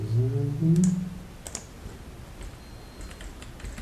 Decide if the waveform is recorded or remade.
recorded